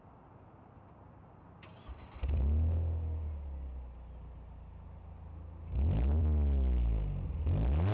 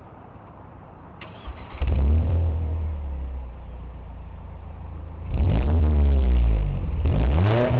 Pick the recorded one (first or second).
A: first